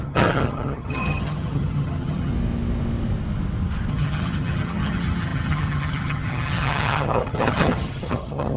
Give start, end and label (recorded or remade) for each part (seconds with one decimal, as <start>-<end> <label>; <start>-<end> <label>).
0.0-2.3 remade; 2.3-3.9 recorded; 3.9-8.6 remade